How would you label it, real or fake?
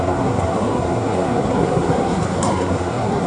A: fake